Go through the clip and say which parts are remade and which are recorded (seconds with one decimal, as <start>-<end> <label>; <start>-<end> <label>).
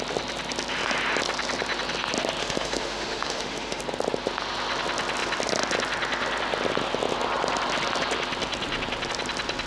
0.0-2.4 recorded; 2.4-3.8 remade; 3.8-9.7 recorded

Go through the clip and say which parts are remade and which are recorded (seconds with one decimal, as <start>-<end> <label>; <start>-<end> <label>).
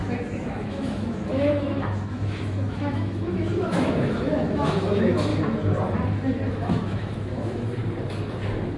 0.0-5.3 remade; 5.3-6.5 recorded; 6.5-7.8 remade; 7.8-8.8 recorded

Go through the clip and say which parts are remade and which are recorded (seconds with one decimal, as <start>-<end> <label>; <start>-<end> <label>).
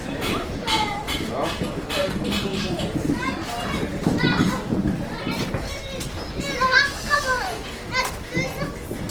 0.0-1.1 remade; 1.1-2.5 recorded; 2.5-7.7 remade; 7.7-9.1 recorded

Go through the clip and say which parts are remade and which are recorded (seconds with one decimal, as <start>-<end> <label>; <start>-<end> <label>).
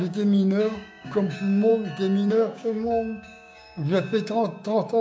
0.0-1.7 remade; 1.7-2.3 recorded; 2.3-5.0 remade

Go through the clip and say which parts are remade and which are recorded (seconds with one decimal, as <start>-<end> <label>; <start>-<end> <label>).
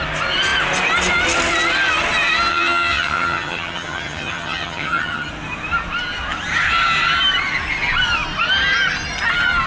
0.0-2.5 recorded; 2.5-5.3 remade; 5.3-9.7 recorded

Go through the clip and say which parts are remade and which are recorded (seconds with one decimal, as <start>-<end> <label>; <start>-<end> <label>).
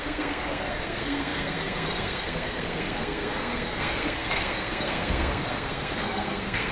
0.0-6.7 remade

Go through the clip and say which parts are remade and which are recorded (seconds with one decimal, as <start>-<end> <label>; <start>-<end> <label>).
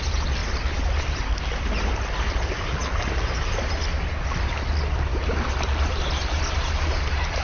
0.0-7.4 recorded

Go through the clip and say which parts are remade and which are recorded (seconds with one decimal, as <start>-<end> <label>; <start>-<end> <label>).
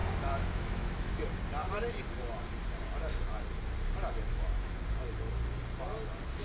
0.0-1.2 remade; 1.2-4.3 recorded; 4.3-4.8 remade; 4.8-6.4 recorded